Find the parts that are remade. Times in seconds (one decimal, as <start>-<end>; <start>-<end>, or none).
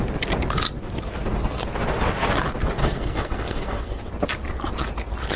2.8-4.0